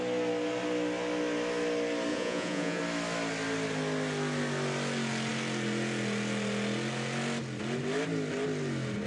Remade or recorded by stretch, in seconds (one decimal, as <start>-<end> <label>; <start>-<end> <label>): 0.0-2.1 recorded; 2.1-2.8 remade; 2.8-9.1 recorded